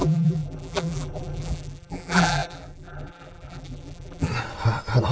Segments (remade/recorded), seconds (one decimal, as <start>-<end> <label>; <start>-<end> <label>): 0.0-4.3 remade; 4.3-5.1 recorded